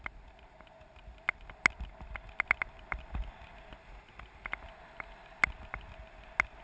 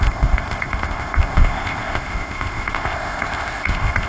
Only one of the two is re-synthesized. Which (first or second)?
second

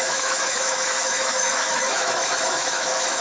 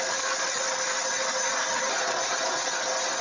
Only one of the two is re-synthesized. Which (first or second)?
first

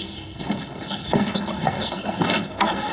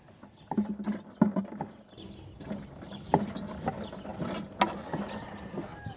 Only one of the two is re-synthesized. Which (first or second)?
first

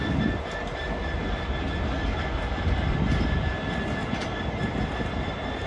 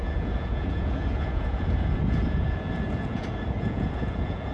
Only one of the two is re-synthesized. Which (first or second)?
second